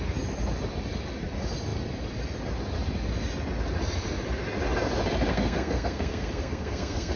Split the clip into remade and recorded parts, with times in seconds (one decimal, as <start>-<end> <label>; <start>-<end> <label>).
0.0-5.3 recorded; 5.3-7.2 remade